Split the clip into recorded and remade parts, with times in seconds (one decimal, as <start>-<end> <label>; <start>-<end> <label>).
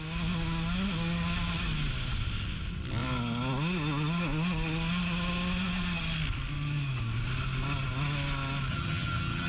0.0-8.7 recorded; 8.7-9.5 remade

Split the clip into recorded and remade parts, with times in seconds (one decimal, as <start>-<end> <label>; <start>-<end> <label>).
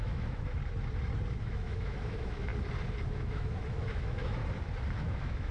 0.0-0.6 remade; 0.6-1.4 recorded; 1.4-2.5 remade; 2.5-3.1 recorded; 3.1-4.4 remade; 4.4-5.0 recorded; 5.0-5.5 remade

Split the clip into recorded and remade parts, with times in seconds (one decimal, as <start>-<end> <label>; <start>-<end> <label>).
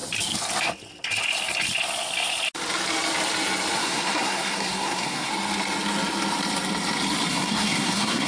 0.0-3.8 recorded; 3.8-5.3 remade; 5.3-7.3 recorded; 7.3-8.3 remade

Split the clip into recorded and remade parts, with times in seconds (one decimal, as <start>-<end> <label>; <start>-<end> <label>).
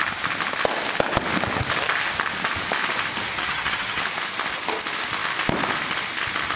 0.0-3.3 recorded; 3.3-4.0 remade; 4.0-6.6 recorded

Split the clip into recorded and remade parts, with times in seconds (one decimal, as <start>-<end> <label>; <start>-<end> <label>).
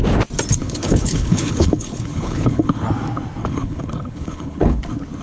0.0-0.6 recorded; 0.6-2.8 remade; 2.8-3.4 recorded; 3.4-4.8 remade; 4.8-5.2 recorded